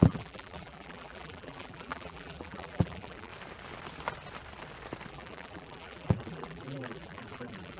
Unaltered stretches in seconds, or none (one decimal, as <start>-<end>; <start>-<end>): 3.3-5.1